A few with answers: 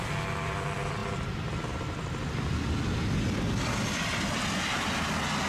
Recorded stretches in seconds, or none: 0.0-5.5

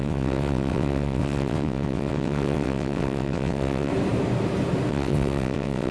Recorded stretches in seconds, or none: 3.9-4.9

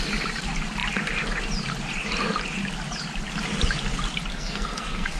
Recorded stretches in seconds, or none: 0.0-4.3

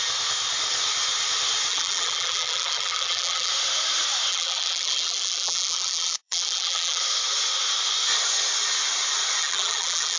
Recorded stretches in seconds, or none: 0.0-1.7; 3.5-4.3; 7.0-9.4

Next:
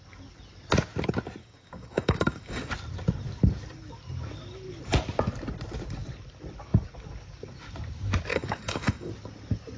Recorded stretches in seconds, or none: 0.0-1.4; 2.7-8.3; 9.1-9.8